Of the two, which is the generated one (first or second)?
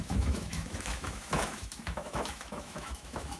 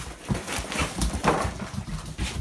first